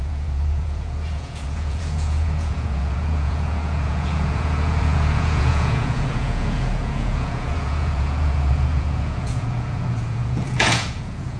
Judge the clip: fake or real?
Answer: fake